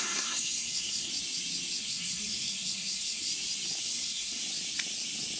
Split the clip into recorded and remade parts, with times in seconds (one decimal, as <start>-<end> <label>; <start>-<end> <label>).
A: 0.0-1.1 remade; 1.1-1.8 recorded; 1.8-3.3 remade; 3.3-3.8 recorded; 3.8-4.4 remade; 4.4-5.4 recorded

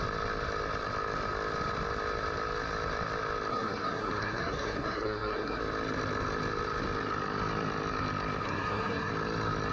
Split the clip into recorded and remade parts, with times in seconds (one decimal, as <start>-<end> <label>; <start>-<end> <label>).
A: 0.0-3.5 recorded; 3.5-5.6 remade; 5.6-8.4 recorded; 8.4-9.1 remade; 9.1-9.7 recorded

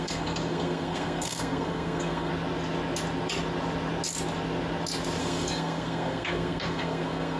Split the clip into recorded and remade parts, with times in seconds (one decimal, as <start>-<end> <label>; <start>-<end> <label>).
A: 0.0-2.3 remade; 2.3-5.2 recorded; 5.2-7.4 remade

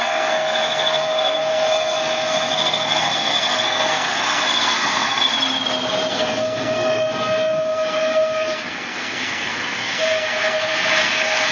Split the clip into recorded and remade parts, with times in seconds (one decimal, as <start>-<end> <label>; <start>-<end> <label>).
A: 0.0-5.3 remade; 5.3-6.1 recorded; 6.1-11.5 remade